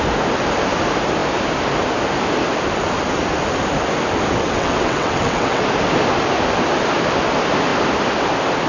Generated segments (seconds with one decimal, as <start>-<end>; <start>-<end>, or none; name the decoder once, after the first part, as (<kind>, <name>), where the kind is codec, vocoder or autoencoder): 4.4-5.6 (vocoder, WaveNeXt)